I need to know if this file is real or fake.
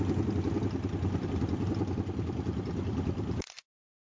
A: real